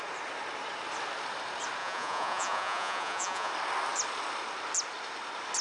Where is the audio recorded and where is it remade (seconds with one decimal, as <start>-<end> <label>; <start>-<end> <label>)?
0.0-1.8 recorded; 1.8-3.5 remade; 3.5-5.6 recorded